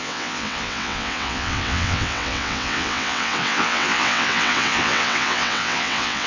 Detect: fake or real fake